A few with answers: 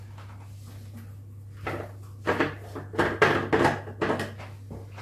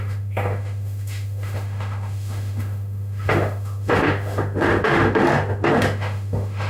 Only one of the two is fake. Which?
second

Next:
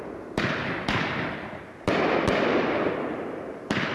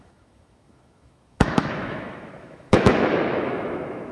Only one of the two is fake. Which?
second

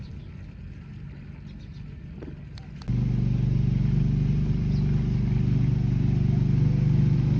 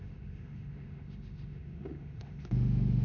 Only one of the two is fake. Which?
second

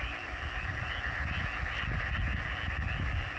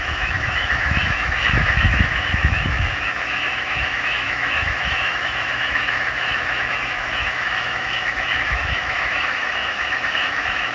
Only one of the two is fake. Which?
second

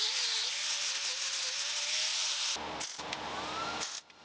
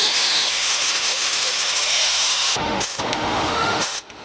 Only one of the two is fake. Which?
second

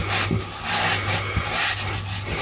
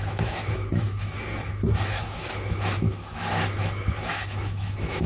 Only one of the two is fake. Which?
second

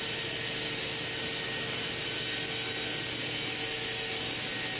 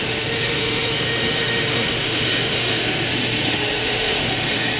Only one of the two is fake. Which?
second